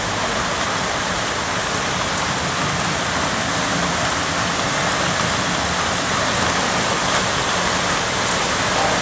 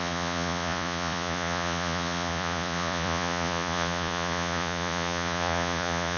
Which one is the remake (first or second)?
second